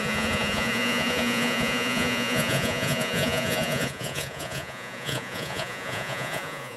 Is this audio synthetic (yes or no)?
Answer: yes